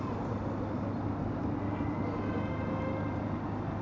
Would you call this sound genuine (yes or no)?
yes